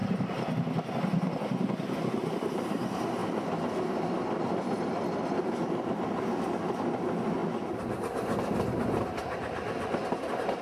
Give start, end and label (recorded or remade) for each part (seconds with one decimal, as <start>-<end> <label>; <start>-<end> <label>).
0.0-3.2 recorded; 3.2-6.3 remade; 6.3-10.6 recorded